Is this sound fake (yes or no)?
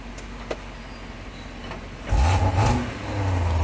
no